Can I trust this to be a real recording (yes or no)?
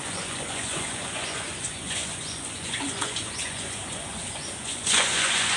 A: no